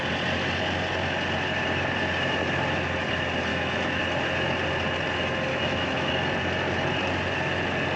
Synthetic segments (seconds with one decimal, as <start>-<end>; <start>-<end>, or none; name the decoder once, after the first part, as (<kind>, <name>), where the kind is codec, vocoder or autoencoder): 3.5-4.0 (autoencoder, DAC-VAE); 5.5-6.1